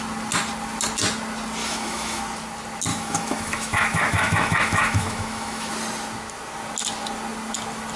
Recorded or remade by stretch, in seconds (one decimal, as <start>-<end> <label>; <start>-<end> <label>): 0.0-1.6 recorded; 1.6-2.2 remade; 2.2-2.9 recorded; 2.9-5.7 remade; 5.7-8.0 recorded